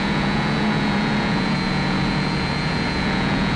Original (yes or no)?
no